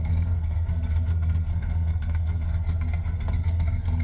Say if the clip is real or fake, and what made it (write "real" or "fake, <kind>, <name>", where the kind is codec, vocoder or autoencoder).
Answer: fake, codec, SNAC